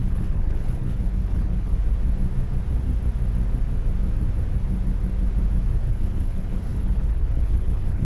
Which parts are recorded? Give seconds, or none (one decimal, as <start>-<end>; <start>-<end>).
1.7-5.9